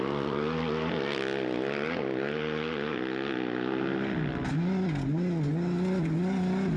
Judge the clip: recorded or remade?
recorded